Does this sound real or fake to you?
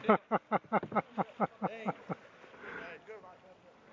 real